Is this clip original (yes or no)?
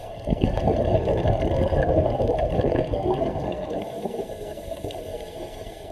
no